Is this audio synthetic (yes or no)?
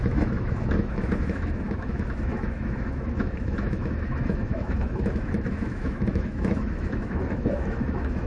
yes